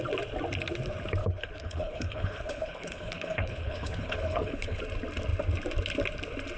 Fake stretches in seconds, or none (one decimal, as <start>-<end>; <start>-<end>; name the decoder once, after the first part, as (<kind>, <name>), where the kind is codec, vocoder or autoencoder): 1.2-4.8 (codec, HILCodec)